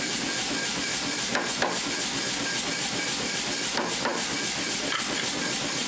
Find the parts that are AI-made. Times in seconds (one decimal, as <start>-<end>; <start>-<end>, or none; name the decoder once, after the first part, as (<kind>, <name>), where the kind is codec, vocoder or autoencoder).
0.0-1.3 (vocoder, BigVGAN v2); 2.6-4.1; 4.7-5.9